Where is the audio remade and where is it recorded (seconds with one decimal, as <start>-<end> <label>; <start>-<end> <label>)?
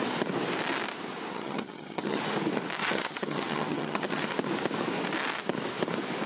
0.0-1.3 recorded; 1.3-2.2 remade; 2.2-2.8 recorded; 2.8-4.2 remade; 4.2-6.3 recorded